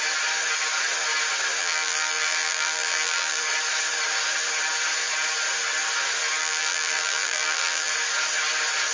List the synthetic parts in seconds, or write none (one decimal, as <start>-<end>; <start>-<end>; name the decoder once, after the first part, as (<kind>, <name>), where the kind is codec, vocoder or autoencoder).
1.6-3.4 (vocoder, BigVGAN v2); 6.4-7.9